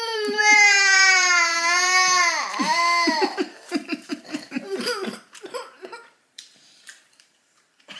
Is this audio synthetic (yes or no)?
yes